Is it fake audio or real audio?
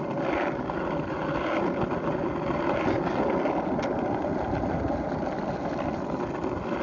real